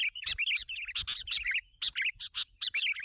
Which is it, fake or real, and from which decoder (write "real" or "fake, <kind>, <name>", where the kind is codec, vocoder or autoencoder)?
real